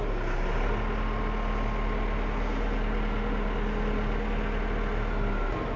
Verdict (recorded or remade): recorded